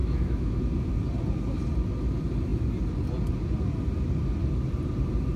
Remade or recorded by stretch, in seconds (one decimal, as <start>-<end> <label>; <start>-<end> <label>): 0.0-0.6 remade; 0.6-5.4 recorded